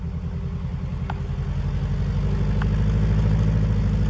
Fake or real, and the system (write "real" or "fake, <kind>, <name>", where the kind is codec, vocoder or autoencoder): real